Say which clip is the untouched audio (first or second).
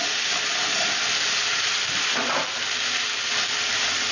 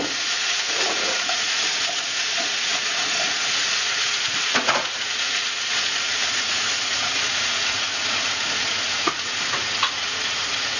first